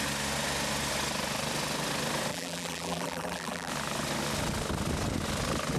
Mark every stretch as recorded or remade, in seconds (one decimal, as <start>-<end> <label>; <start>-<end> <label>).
0.0-2.3 recorded; 2.3-3.7 remade; 3.7-5.8 recorded